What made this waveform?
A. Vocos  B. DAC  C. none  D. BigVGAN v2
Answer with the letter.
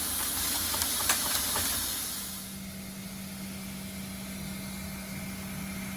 C